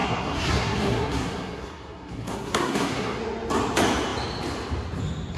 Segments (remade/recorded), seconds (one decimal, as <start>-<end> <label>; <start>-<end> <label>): 0.0-3.2 remade; 3.2-5.4 recorded